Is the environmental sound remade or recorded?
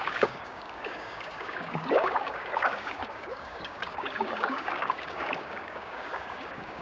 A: remade